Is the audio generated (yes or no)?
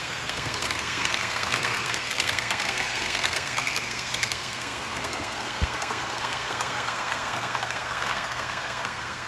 yes